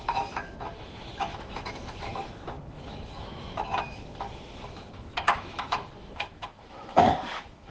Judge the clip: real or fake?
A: fake